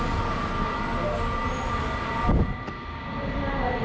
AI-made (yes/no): no